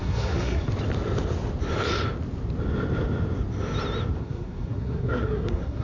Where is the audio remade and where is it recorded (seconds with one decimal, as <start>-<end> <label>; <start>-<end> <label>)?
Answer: 0.0-0.7 remade; 0.7-4.2 recorded; 4.2-5.8 remade